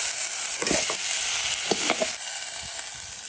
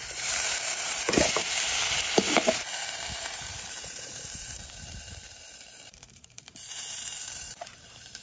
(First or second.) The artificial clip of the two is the second